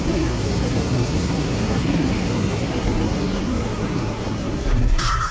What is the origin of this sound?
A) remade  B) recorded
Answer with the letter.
A